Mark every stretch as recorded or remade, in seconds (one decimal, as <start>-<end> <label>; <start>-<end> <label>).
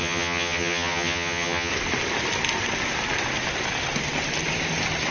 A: 0.0-1.7 remade; 1.7-5.1 recorded